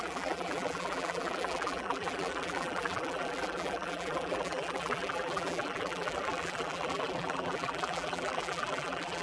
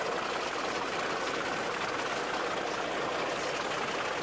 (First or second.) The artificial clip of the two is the first